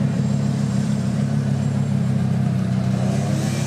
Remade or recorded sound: remade